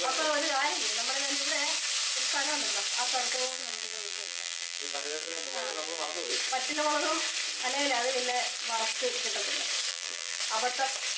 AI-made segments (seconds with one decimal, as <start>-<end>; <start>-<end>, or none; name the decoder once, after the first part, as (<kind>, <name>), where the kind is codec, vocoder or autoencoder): 3.5-6.3 (vocoder, BigVGAN v2); 9.9-10.4